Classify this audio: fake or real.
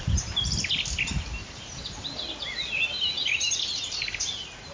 real